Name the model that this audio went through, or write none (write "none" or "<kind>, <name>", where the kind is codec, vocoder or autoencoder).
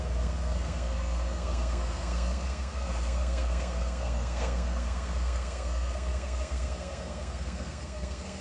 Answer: codec, SNAC